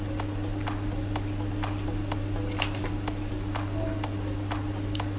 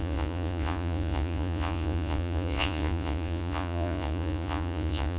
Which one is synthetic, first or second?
second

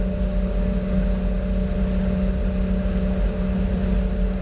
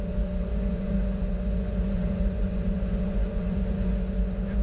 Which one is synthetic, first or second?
second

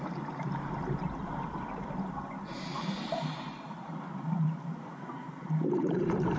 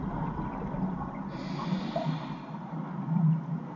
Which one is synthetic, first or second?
first